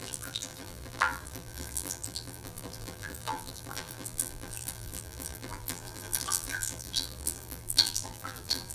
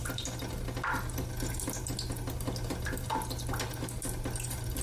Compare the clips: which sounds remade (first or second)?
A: first